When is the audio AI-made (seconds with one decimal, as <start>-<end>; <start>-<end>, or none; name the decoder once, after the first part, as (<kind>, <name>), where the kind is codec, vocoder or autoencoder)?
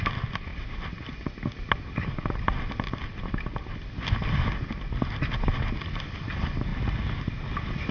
none